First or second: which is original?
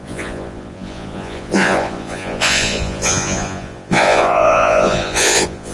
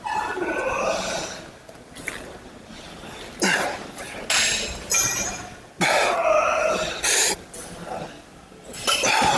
second